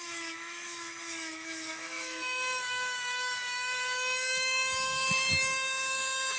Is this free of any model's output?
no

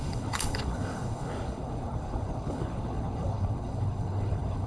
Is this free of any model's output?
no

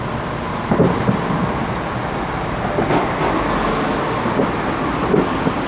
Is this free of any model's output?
yes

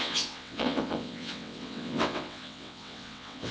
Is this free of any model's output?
no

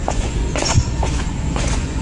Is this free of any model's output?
no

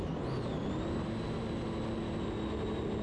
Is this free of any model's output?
yes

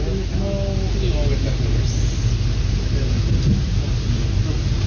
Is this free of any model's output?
yes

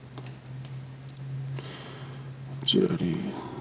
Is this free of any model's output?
yes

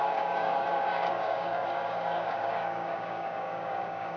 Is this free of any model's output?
no